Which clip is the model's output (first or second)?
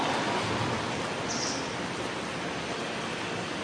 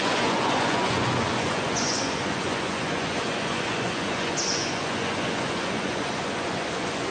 second